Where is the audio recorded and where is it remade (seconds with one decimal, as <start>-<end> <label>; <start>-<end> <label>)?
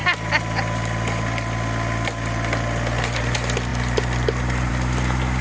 0.0-5.4 recorded